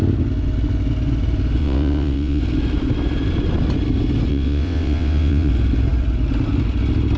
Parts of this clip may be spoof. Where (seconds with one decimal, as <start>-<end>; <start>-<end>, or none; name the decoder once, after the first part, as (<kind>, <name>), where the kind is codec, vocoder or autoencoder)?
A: 1.6-2.4 (vocoder, WaveNeXt); 4.3-5.5